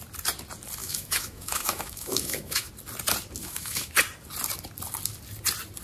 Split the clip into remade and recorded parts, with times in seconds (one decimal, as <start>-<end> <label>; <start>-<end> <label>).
0.0-0.8 recorded; 0.8-2.7 remade; 2.7-3.4 recorded; 3.4-3.9 remade; 3.9-5.8 recorded